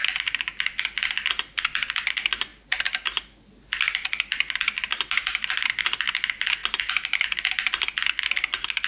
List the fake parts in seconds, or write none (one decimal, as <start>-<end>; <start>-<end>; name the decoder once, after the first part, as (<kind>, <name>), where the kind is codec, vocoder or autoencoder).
none